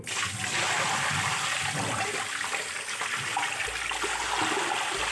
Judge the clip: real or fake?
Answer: real